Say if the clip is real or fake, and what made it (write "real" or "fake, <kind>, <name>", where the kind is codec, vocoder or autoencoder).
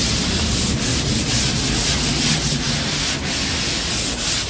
real